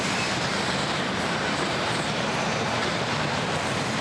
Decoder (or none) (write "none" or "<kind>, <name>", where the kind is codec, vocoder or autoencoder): vocoder, BigVGAN v2